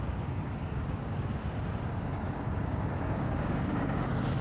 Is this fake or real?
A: fake